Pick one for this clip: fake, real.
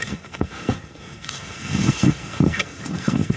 fake